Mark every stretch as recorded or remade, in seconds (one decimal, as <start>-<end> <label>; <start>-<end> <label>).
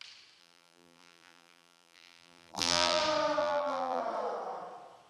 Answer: 0.0-0.4 recorded; 0.4-3.0 remade; 3.0-3.4 recorded; 3.4-4.0 remade; 4.0-5.1 recorded